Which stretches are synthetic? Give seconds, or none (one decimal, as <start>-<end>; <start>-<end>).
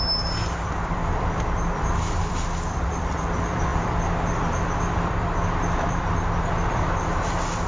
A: 0.0-7.7